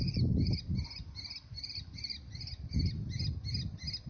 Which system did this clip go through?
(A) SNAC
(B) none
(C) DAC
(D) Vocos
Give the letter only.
B